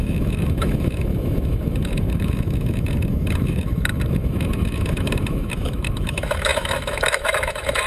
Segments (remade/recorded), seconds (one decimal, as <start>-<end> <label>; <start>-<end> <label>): 0.0-7.9 remade